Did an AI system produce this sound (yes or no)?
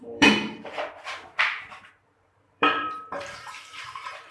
yes